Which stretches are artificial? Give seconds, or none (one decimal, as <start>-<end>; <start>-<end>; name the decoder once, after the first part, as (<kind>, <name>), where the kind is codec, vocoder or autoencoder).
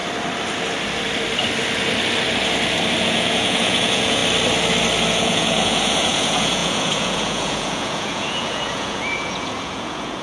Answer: 3.0-4.2 (vocoder, Vocos); 5.1-10.2